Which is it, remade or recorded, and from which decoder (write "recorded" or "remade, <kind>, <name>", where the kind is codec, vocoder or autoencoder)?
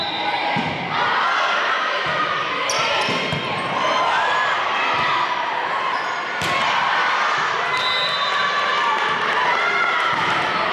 recorded